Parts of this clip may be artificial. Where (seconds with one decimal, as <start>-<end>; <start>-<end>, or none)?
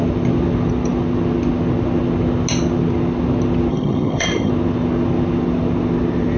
3.7-4.5